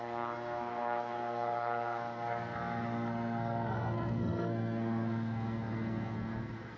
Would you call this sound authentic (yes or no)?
no